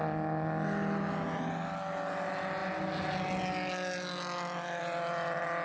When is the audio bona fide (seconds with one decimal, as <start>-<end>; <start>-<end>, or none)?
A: 0.0-5.6